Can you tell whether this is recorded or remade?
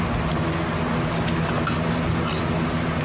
recorded